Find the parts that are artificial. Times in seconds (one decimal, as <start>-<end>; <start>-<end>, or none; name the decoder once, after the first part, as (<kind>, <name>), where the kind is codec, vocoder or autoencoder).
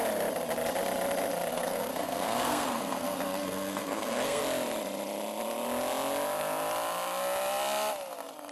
1.5-4.4 (codec, SNAC)